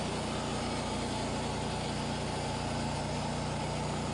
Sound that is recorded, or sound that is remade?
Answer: recorded